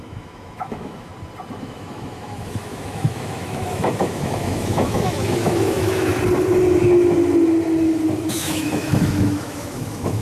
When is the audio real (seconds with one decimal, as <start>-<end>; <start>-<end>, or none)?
1.1-1.6; 6.1-8.3